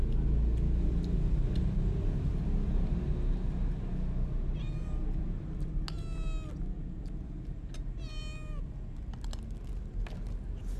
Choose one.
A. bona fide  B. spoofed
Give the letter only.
A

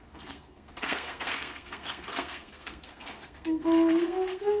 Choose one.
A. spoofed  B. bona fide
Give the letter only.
A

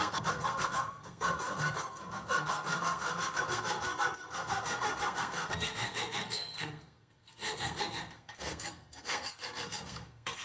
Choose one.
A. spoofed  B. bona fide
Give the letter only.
A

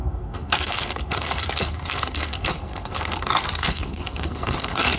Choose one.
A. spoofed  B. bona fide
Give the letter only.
A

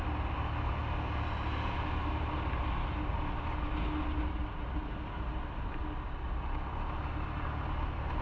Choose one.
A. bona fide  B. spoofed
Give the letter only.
A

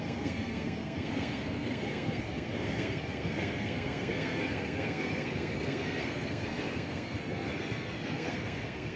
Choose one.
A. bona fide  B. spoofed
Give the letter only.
B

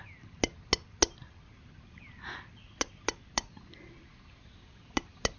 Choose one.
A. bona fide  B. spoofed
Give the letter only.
A